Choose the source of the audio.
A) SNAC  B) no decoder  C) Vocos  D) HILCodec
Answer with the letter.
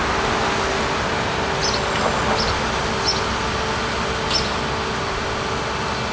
B